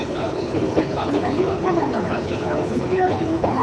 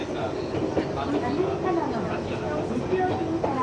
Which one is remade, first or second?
first